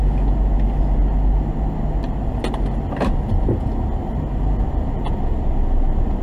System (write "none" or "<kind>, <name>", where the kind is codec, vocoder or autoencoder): none